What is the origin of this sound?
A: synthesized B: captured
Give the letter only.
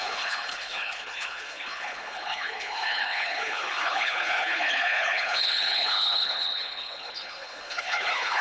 A